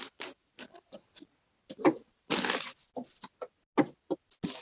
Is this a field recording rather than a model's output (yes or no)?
yes